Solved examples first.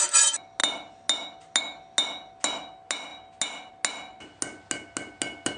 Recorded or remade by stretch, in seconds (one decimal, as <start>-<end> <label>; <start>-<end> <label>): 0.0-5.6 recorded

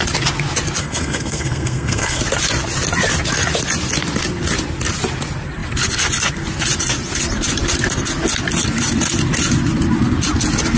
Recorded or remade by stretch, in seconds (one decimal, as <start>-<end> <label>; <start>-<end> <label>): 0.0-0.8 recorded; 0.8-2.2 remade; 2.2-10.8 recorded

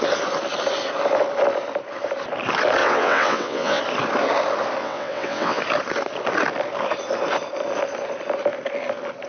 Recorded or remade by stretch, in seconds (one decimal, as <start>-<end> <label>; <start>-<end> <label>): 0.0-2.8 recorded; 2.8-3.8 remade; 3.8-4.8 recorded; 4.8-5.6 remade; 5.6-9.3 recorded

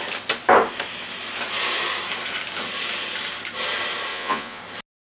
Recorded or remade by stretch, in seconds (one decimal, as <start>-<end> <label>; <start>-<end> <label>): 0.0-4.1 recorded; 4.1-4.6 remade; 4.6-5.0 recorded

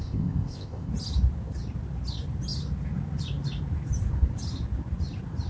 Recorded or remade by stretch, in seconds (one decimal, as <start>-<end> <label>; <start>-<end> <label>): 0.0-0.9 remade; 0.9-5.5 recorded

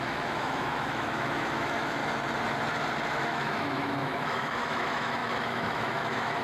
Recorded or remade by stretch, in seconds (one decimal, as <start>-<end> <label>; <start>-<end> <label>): 0.0-2.0 remade; 2.0-3.1 recorded; 3.1-6.4 remade